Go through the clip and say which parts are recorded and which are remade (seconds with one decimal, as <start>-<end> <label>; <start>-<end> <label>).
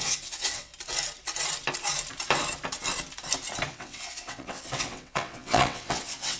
0.0-0.7 remade; 0.7-3.7 recorded; 3.7-6.4 remade